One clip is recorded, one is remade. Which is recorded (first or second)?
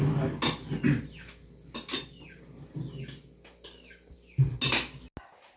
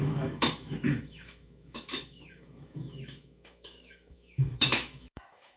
first